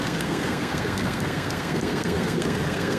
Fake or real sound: fake